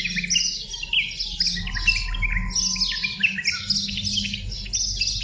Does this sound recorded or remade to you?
recorded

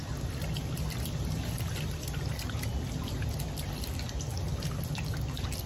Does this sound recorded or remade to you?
recorded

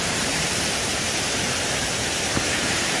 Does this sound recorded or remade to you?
remade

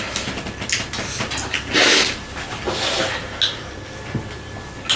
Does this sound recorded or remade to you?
recorded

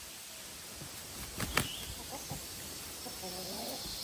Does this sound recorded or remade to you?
recorded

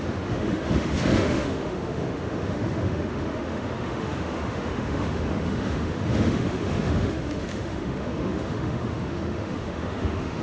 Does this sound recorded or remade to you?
remade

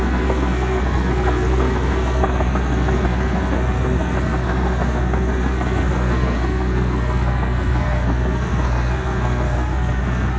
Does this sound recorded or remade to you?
remade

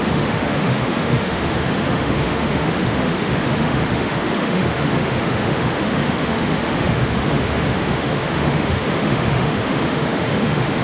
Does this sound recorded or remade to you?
remade